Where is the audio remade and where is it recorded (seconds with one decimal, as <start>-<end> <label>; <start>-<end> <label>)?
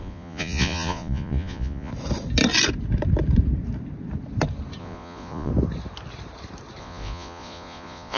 0.0-1.9 remade; 1.9-4.8 recorded; 4.8-5.5 remade; 5.5-6.8 recorded; 6.8-8.2 remade